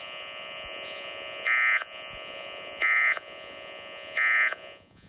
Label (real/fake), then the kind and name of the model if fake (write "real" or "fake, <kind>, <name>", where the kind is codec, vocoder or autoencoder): fake, vocoder, Vocos